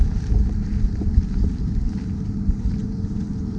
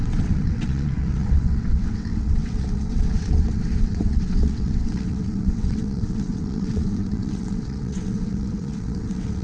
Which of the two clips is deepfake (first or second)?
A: second